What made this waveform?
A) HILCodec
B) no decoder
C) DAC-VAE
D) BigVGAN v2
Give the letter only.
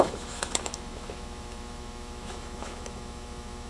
C